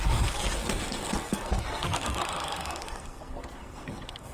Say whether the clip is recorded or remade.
remade